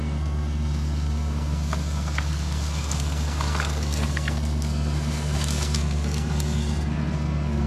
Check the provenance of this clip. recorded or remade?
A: remade